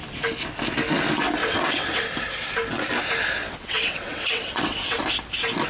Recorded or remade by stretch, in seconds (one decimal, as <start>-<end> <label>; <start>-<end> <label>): 0.0-1.4 recorded; 1.4-2.1 remade; 2.1-3.4 recorded; 3.4-5.0 remade; 5.0-5.7 recorded